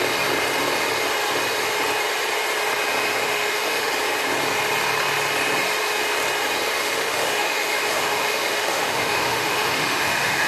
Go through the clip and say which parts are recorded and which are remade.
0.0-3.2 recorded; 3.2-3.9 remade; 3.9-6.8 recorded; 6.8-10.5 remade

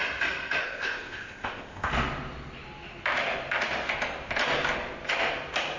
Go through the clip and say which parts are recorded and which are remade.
0.0-0.6 recorded; 0.6-1.9 remade; 1.9-5.8 recorded

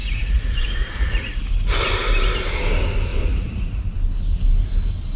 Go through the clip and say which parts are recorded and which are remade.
0.0-1.5 remade; 1.5-3.1 recorded; 3.1-3.8 remade; 3.8-5.2 recorded

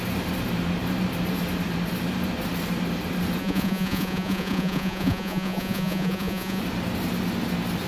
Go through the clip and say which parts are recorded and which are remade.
0.0-3.4 recorded; 3.4-6.6 remade; 6.6-7.9 recorded

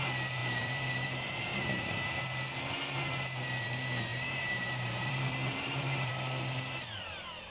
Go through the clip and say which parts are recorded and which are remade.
0.0-0.4 recorded; 0.4-2.2 remade; 2.2-4.1 recorded; 4.1-6.1 remade; 6.1-7.5 recorded

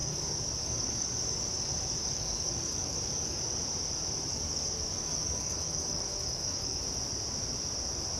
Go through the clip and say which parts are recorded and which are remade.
0.0-1.5 remade; 1.5-2.0 recorded; 2.0-3.4 remade; 3.4-4.3 recorded; 4.3-6.8 remade; 6.8-8.2 recorded